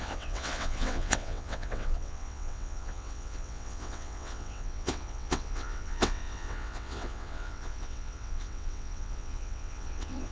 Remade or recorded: remade